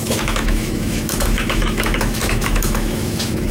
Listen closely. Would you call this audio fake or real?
fake